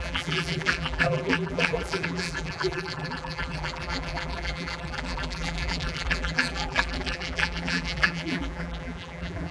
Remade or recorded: remade